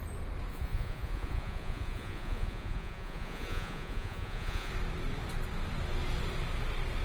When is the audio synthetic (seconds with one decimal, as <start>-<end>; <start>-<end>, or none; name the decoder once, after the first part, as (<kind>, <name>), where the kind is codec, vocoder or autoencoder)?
0.5-4.7 (vocoder, Vocos)